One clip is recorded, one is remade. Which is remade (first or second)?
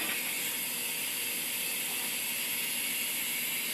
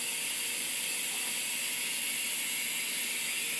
second